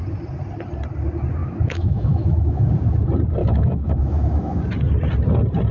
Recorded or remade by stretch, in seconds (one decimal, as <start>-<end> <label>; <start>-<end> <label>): 0.0-1.4 recorded; 1.4-2.7 remade; 2.7-3.4 recorded; 3.4-4.6 remade; 4.6-5.7 recorded